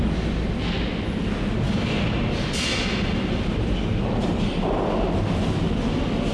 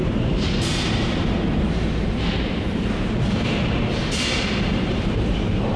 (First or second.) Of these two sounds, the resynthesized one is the second